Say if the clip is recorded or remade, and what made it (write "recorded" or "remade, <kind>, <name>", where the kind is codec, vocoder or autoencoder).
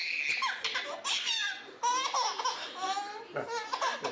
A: recorded